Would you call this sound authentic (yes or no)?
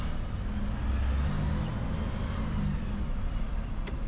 yes